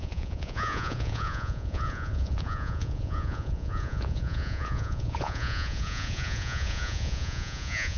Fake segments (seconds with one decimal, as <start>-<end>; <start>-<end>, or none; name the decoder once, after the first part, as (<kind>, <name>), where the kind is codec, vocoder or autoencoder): 0.0-8.0 (vocoder, Vocos)